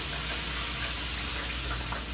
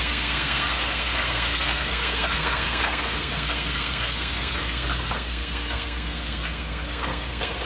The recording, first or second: first